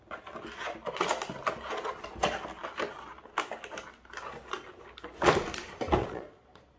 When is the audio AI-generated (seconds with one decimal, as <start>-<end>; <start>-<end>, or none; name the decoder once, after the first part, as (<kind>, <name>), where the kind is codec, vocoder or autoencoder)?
6.0-6.8 (vocoder, Vocos)